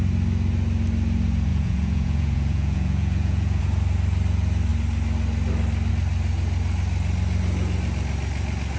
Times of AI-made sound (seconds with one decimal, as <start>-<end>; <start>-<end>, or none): 1.5-3.6